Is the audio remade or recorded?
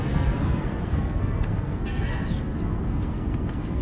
remade